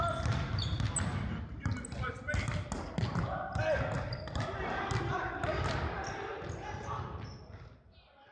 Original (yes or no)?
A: yes